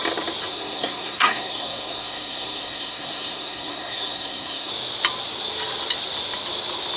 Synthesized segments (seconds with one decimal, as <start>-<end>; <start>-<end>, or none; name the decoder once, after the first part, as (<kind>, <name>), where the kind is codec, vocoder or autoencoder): 0.5-4.7 (codec, SNAC)